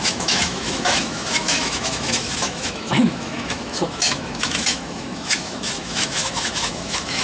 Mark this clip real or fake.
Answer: fake